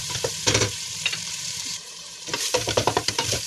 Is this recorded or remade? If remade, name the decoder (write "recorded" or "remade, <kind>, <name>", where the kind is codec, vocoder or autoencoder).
remade, vocoder, BigVGAN v2